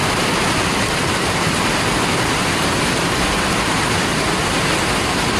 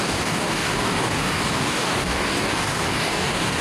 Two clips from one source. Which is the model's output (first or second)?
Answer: second